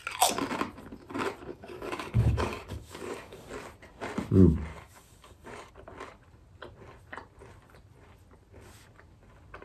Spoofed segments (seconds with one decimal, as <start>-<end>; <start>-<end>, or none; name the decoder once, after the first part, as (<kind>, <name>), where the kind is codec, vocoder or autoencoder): 1.5-3.5 (codec, DAC); 4.7-5.7